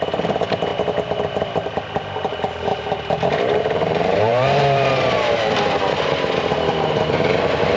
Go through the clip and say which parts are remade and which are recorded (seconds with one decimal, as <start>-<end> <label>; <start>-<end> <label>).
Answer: 0.0-0.7 recorded; 0.7-2.3 remade; 2.3-2.7 recorded; 2.7-7.8 remade